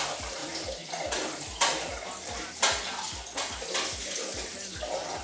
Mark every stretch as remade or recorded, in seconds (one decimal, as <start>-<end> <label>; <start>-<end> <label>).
0.0-5.2 recorded